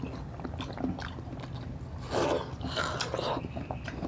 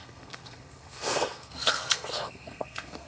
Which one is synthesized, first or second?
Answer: second